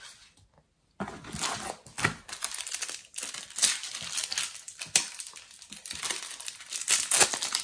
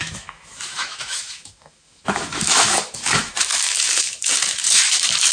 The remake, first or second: second